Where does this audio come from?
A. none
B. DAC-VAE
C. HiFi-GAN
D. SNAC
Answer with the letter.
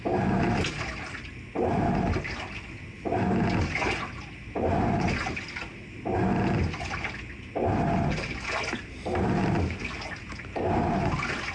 A